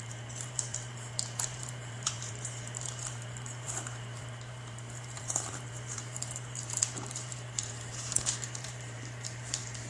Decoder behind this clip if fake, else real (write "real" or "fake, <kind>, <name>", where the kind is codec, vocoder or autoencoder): fake, vocoder, BigVGAN v2